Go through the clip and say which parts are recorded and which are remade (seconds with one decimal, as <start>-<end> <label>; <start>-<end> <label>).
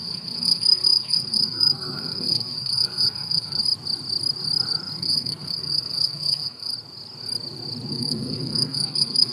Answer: 0.0-3.6 remade; 3.6-5.0 recorded; 5.0-6.7 remade; 6.7-7.9 recorded; 7.9-9.3 remade